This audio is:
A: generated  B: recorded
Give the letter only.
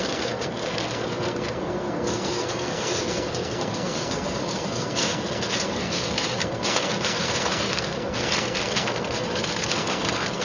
A